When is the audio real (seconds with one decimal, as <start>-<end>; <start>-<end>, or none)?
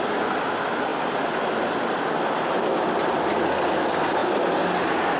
0.0-5.2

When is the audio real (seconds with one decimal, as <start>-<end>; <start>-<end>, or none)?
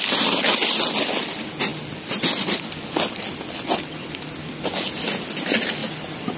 0.0-6.4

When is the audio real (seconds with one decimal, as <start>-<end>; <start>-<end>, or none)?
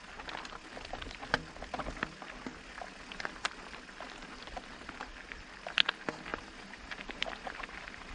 0.0-6.3